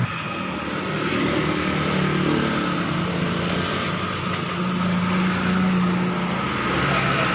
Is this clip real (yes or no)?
yes